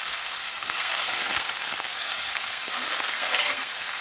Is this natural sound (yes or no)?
no